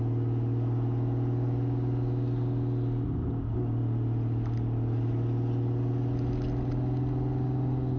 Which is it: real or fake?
real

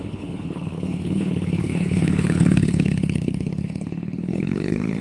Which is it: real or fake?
fake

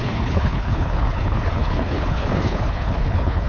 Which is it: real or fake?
fake